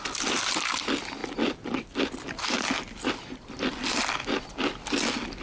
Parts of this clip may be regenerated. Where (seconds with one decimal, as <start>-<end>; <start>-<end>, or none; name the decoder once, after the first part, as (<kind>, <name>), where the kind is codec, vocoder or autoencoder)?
none